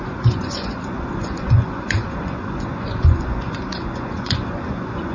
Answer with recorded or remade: remade